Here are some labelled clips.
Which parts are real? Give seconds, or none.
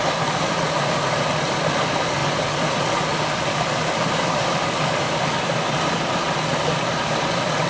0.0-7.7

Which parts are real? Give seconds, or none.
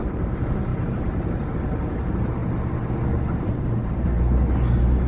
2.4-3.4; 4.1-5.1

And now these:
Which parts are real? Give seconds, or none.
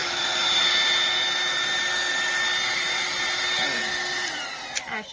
0.7-5.1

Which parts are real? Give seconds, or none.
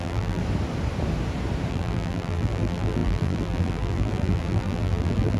0.4-1.7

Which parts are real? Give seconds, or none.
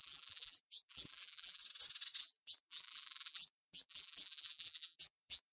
1.6-2.2